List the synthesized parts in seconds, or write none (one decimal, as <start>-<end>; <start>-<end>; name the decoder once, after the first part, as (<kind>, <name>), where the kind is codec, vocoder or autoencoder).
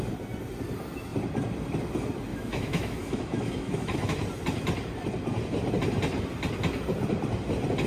2.3-4.2 (autoencoder, DAC-VAE)